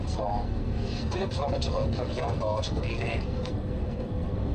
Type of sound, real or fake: fake